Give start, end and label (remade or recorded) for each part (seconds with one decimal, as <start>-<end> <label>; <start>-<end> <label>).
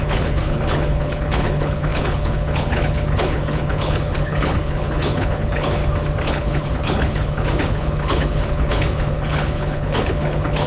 0.0-5.8 remade; 5.8-6.3 recorded; 6.3-10.7 remade